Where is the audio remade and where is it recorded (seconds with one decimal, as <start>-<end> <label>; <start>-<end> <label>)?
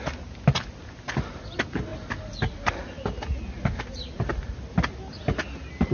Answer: 0.0-5.9 recorded